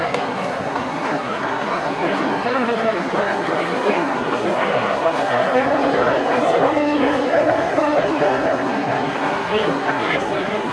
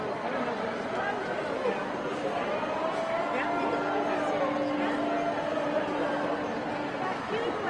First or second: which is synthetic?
first